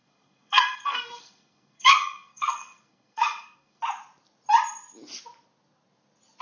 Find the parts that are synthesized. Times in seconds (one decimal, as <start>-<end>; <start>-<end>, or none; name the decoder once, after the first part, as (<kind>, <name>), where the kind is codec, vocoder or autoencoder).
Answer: 0.0-3.8 (codec, SNAC)